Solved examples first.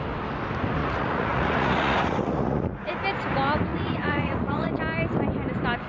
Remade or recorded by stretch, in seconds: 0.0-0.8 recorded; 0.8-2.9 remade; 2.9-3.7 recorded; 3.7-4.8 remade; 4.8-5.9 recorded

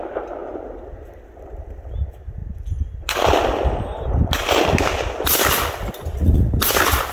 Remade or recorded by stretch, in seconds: 0.0-7.1 recorded